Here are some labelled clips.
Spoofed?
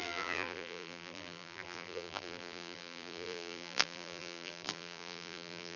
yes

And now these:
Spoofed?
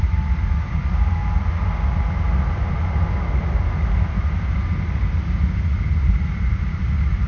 no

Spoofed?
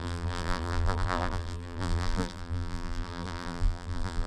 yes